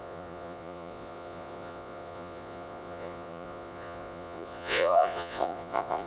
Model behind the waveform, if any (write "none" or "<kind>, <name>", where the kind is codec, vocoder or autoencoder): vocoder, Vocos